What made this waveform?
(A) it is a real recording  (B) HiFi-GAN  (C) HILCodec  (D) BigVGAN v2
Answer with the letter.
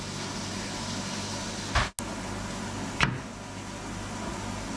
A